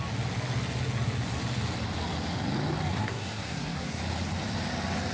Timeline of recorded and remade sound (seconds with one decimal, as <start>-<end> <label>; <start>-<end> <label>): 0.0-2.9 recorded; 2.9-4.0 remade; 4.0-5.1 recorded